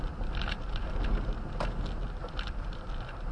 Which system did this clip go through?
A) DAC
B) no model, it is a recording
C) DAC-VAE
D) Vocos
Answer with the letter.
B